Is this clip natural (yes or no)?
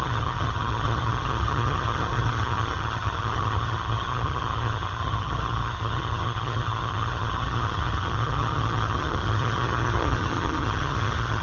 no